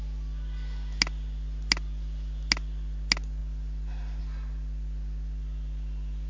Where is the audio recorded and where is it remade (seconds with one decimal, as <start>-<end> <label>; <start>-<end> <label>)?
0.0-6.3 recorded